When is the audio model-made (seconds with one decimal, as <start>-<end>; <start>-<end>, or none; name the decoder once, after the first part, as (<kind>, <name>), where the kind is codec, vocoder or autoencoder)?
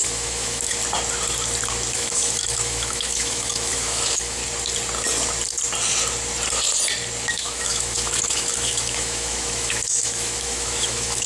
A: 0.0-0.8 (autoencoder, DAC-VAE); 1.9-4.4; 7.3-11.3